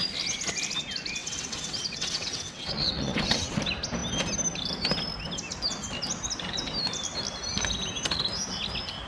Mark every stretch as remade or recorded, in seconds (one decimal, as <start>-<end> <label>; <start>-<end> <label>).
0.0-1.2 recorded; 1.2-3.6 remade; 3.6-9.1 recorded

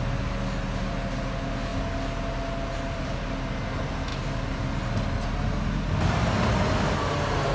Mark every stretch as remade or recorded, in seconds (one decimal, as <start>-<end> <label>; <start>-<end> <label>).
0.0-7.5 recorded